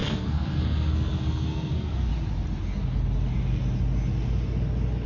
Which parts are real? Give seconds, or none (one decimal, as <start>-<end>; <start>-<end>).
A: 2.1-5.1